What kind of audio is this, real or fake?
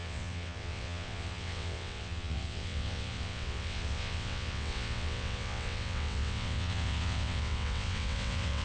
fake